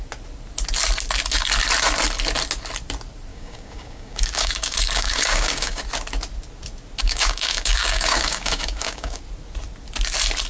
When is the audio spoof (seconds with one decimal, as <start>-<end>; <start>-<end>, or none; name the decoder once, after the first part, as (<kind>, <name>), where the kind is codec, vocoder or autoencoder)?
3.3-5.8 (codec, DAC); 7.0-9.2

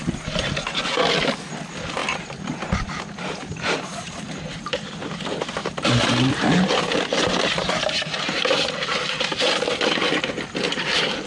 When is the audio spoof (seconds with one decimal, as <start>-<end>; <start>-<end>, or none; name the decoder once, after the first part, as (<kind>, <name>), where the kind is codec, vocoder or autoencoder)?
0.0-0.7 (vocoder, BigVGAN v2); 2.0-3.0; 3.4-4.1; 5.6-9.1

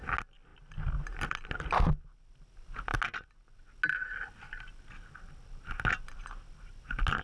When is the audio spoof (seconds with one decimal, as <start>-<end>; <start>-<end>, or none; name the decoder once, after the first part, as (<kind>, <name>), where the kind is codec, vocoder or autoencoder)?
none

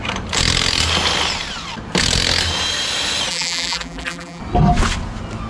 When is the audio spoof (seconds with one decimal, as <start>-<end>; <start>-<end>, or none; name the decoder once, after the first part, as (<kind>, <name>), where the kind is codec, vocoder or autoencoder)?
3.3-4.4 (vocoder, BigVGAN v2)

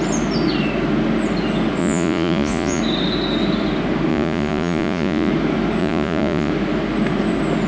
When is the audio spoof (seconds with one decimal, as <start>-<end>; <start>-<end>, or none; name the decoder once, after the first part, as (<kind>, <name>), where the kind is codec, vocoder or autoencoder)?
1.8-2.8 (vocoder, Vocos); 4.1-5.3; 5.8-6.5

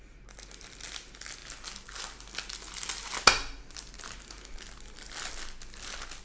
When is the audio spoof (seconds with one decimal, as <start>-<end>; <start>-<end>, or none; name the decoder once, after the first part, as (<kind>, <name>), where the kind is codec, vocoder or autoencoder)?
none

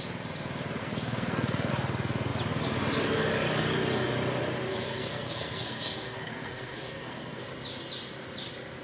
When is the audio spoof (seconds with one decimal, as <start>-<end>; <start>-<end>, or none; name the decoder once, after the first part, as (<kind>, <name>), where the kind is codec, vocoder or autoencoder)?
0.8-1.7 (codec, SNAC); 4.7-7.4

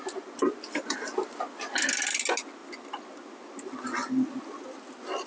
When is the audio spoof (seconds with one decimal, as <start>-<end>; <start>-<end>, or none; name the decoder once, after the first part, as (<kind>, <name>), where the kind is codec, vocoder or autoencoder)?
none